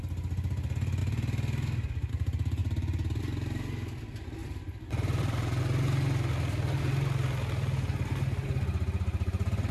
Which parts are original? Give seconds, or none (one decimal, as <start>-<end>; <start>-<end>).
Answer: 0.0-2.6; 3.2-4.4; 5.6-9.7